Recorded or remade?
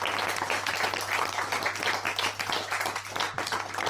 recorded